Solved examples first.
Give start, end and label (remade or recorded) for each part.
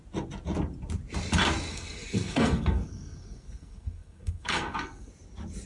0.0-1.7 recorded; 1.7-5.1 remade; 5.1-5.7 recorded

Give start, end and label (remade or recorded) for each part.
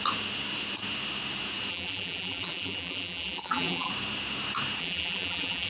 0.0-1.7 recorded; 1.7-3.9 remade; 3.9-4.8 recorded; 4.8-5.7 remade